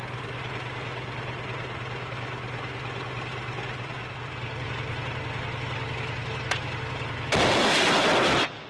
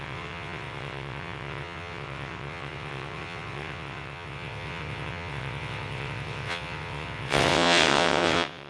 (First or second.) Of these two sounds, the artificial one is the second